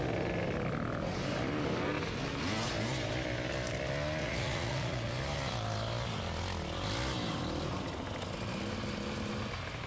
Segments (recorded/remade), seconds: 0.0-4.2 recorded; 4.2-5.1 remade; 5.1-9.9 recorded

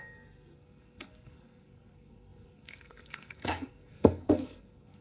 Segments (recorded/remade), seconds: 0.0-5.0 remade

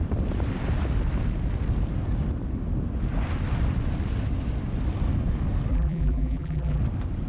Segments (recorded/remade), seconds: 0.0-5.7 recorded; 5.7-6.8 remade; 6.8-7.3 recorded